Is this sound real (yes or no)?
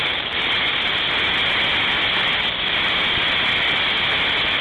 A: yes